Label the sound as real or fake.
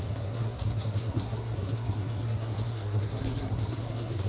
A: fake